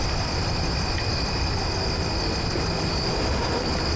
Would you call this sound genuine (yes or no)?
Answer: yes